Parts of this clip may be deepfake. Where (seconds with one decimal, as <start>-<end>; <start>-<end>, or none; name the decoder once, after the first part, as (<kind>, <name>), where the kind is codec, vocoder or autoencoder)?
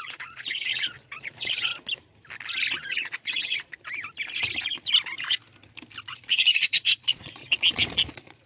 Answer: 0.0-1.7 (vocoder, Vocos); 2.8-3.7; 6.1-7.4; 8.1-8.5